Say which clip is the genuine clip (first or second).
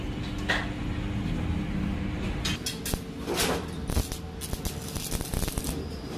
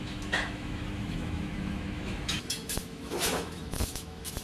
first